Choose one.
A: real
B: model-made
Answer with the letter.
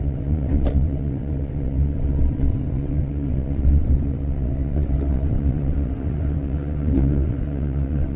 B